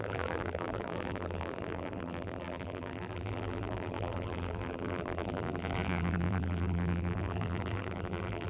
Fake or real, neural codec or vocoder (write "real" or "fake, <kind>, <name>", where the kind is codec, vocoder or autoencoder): fake, vocoder, BigVGAN v2